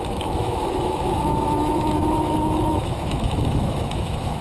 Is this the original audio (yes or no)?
no